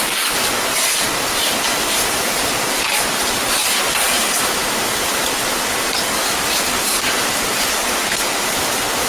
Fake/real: real